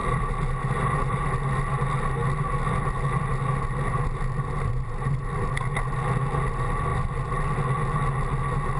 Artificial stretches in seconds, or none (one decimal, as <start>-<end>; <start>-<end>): 0.0-0.7; 6.9-7.5